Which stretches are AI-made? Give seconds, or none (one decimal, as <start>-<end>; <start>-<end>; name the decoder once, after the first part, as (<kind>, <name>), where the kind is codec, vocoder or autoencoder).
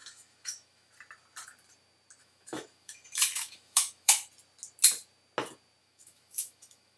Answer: 0.0-0.9 (autoencoder, DAC-VAE); 2.2-4.1; 5.8-7.0